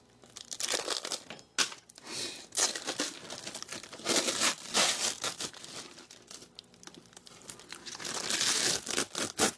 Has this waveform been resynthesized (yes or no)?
no